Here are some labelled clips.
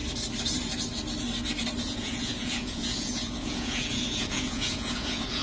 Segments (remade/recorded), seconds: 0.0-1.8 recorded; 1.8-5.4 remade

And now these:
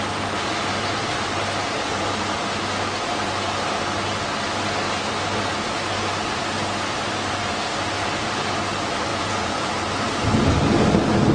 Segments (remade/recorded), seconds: 0.0-9.1 recorded; 9.1-9.7 remade; 9.7-11.3 recorded

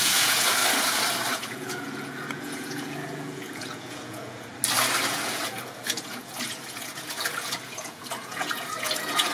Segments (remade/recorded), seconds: 0.0-0.6 remade; 0.6-1.3 recorded; 1.3-4.5 remade; 4.5-5.1 recorded; 5.1-9.3 remade